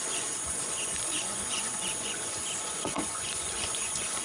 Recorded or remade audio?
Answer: remade